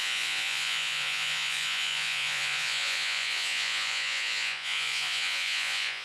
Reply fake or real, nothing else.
fake